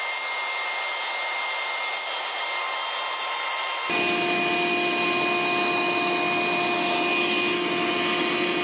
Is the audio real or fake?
real